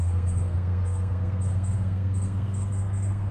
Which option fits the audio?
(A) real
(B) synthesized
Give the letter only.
B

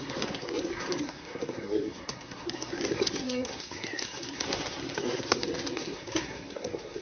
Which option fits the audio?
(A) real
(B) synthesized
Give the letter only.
B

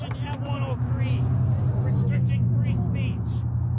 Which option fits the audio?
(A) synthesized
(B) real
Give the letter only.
B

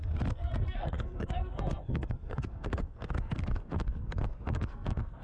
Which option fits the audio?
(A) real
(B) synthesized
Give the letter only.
B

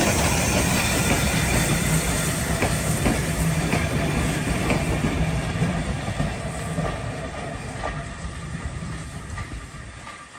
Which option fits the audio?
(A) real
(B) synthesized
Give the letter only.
A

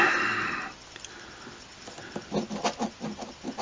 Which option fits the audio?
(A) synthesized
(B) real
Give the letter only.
B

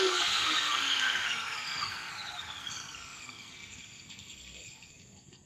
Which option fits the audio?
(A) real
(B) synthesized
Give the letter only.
B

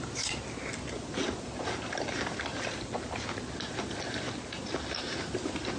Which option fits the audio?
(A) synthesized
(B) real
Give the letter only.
B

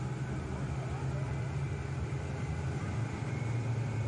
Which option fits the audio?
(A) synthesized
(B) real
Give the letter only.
B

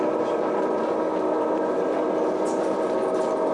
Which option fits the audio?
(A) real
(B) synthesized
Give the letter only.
A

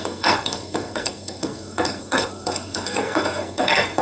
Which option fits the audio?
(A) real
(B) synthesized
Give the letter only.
B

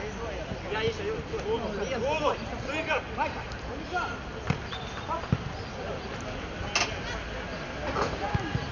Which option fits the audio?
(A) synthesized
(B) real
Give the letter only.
B